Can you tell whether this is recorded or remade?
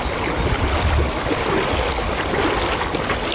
recorded